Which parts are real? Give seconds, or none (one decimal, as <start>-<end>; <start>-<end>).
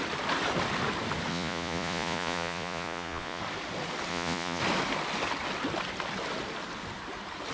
0.0-1.3; 3.4-4.1; 4.6-7.5